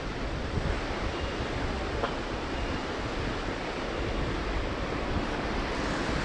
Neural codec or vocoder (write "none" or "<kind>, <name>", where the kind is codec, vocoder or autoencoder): none